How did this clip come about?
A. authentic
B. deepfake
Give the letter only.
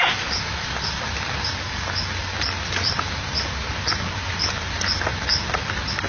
A